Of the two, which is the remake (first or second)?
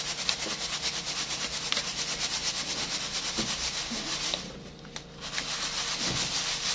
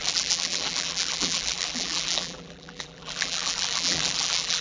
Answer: second